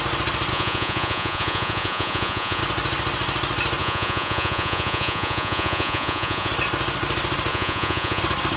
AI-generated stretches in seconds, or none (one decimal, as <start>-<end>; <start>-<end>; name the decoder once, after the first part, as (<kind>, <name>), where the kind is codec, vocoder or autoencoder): 0.5-2.6 (vocoder, Vocos); 3.8-6.5; 7.5-8.2